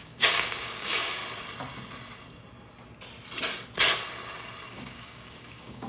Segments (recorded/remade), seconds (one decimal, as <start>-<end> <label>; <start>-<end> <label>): 0.0-1.2 remade; 1.2-4.7 recorded; 4.7-5.9 remade